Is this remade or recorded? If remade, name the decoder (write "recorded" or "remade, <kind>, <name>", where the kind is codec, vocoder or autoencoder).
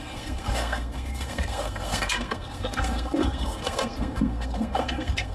remade, codec, SNAC